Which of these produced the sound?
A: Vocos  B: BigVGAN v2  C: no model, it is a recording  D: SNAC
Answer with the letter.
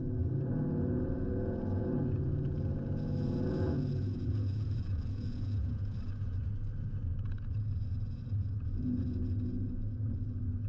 A